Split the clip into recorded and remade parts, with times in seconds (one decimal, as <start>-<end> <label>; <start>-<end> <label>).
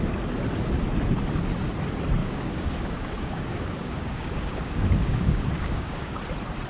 0.0-2.2 recorded; 2.2-6.2 remade; 6.2-6.7 recorded